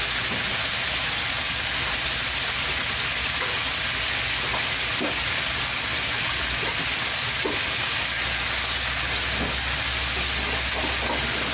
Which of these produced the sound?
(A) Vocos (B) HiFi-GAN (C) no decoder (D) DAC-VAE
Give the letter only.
C